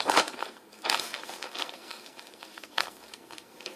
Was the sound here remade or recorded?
remade